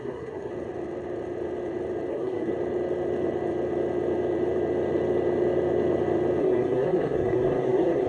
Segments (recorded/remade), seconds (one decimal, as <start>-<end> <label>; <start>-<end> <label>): 0.0-0.5 remade; 0.5-2.1 recorded; 2.1-2.5 remade; 2.5-6.4 recorded; 6.4-8.1 remade